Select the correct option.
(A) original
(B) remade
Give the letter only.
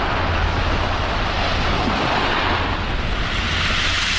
A